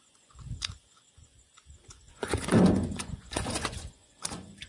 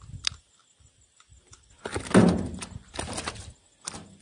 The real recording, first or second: second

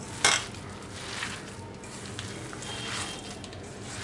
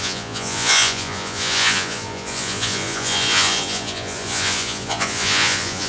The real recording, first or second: first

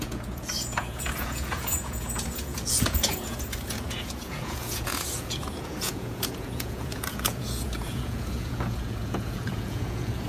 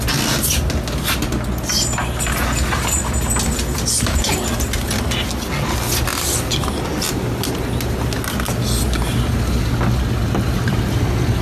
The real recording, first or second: second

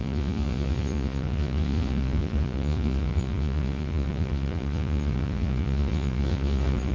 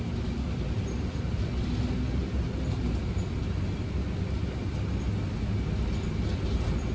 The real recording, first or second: second